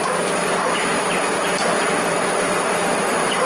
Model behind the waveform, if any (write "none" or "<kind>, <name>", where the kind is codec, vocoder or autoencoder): vocoder, BigVGAN v2